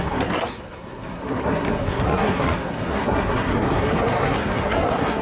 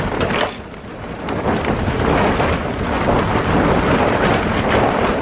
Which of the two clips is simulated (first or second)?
first